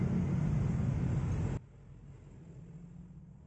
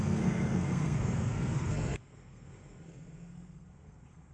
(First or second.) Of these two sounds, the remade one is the second